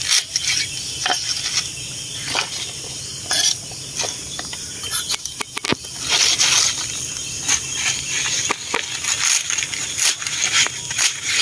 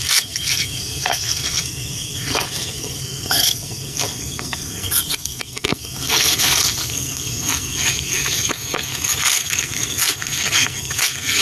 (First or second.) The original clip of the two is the first